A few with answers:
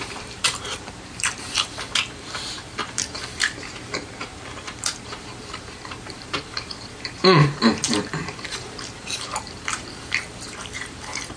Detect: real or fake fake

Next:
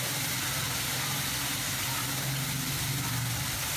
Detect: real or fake real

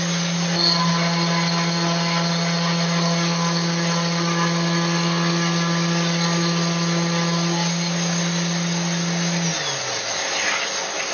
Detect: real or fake real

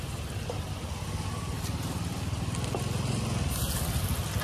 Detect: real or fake real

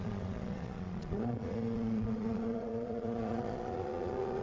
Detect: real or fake fake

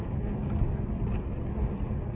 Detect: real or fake real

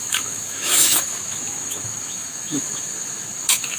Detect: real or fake fake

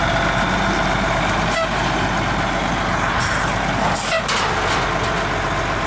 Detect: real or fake real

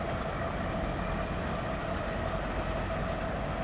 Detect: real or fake real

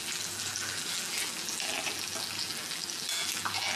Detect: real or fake fake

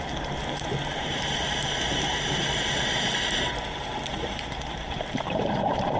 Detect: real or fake fake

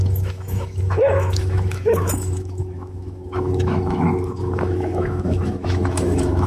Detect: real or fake fake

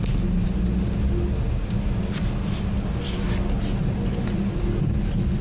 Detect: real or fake real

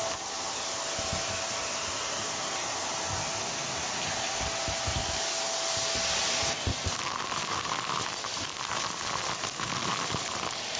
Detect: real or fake real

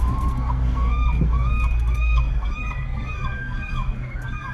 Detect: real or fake fake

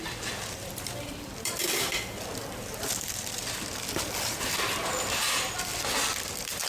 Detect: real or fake fake